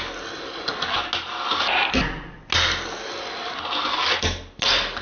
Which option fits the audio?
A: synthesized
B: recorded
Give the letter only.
B